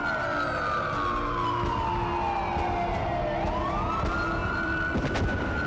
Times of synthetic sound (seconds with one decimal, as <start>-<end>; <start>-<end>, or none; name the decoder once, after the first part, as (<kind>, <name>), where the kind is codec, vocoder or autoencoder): 4.4-5.3 (vocoder, BigVGAN v2)